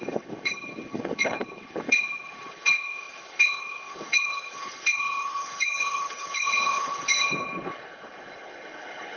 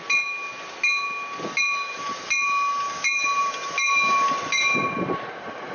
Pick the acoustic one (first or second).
second